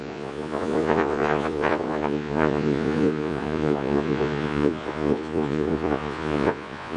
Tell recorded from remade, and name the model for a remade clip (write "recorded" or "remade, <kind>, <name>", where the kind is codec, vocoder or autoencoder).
remade, vocoder, Vocos